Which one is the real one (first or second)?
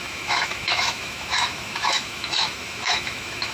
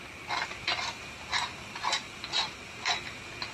second